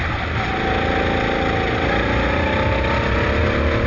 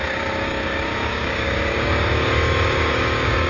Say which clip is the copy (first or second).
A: second